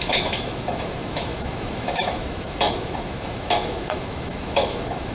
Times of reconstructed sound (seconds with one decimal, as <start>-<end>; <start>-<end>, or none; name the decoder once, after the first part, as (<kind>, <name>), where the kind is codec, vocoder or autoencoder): 0.0-5.1 (autoencoder, DAC-VAE)